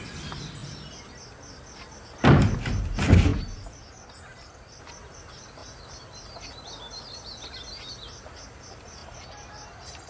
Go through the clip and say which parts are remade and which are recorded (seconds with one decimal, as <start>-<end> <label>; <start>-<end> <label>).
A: 0.0-3.3 recorded; 3.3-4.8 remade; 4.8-9.0 recorded; 9.0-9.5 remade; 9.5-10.1 recorded